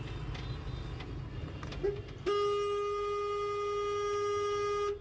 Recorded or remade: recorded